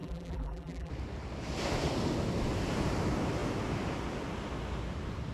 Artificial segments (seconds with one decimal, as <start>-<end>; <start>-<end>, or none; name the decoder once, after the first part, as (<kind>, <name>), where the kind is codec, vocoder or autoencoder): 0.0-0.9 (vocoder, BigVGAN v2)